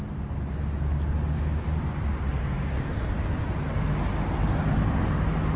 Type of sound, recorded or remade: recorded